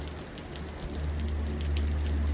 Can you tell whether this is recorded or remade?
recorded